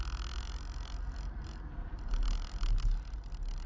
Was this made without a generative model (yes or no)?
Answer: yes